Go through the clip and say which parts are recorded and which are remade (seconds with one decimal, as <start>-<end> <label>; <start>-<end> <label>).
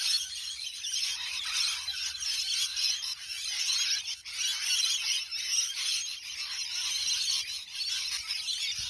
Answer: 0.0-0.4 recorded; 0.4-2.0 remade; 2.0-2.7 recorded; 2.7-3.6 remade; 3.6-8.9 recorded